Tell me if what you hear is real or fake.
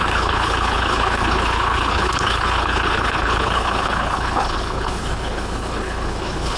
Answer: fake